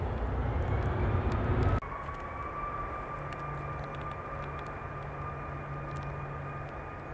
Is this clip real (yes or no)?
yes